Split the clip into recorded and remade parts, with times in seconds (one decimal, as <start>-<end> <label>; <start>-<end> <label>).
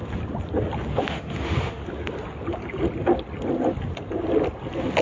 0.0-1.1 recorded; 1.1-1.8 remade; 1.8-5.0 recorded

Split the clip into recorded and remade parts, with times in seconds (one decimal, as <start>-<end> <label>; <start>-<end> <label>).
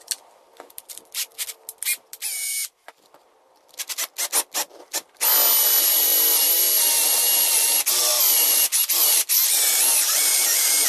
0.0-10.9 recorded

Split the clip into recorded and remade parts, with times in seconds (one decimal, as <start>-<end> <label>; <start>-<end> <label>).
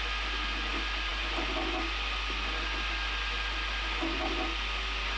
0.0-5.2 recorded